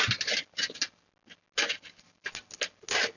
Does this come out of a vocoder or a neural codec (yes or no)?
no